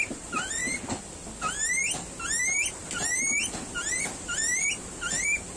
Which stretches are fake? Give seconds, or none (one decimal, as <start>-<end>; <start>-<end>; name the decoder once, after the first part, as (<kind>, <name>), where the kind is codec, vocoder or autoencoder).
none